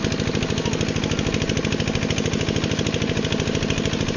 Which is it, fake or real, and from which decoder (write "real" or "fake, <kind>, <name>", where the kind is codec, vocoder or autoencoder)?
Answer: real